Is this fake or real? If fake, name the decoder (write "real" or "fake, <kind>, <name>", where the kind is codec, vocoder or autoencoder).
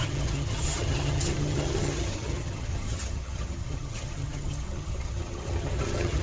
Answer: fake, vocoder, HiFi-GAN